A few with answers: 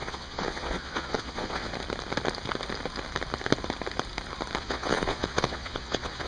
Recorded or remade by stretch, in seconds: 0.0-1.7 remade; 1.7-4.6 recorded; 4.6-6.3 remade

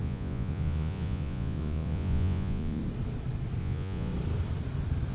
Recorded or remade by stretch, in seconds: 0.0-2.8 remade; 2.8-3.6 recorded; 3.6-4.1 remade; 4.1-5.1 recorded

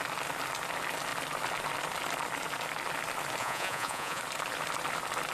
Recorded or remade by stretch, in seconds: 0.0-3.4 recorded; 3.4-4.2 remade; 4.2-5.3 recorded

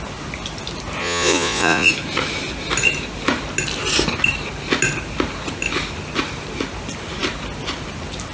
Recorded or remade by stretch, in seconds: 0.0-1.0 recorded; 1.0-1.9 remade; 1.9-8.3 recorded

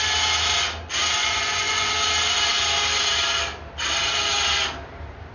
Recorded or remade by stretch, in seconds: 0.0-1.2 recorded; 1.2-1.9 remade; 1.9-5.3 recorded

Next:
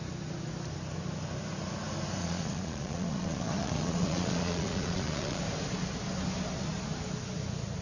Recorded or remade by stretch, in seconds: 0.0-2.2 recorded; 2.2-5.4 remade; 5.4-7.8 recorded

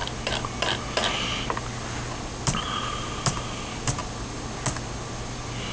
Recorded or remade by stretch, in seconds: 0.0-5.7 recorded

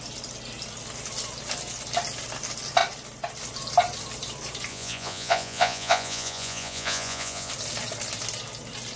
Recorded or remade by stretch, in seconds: 0.0-4.7 recorded; 4.7-7.5 remade; 7.5-9.0 recorded